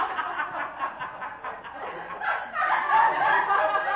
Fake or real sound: real